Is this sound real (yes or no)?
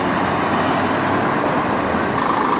yes